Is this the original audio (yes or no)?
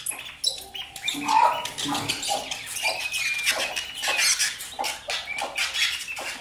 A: yes